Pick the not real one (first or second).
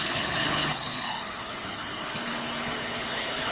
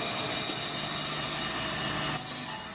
first